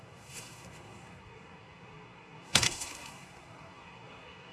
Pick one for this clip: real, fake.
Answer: fake